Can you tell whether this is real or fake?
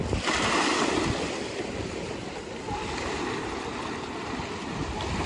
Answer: real